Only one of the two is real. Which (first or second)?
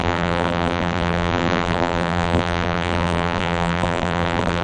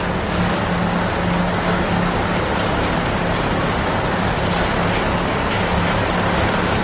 second